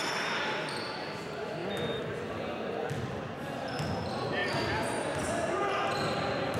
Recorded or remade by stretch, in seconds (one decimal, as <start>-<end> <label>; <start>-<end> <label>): 0.0-6.6 recorded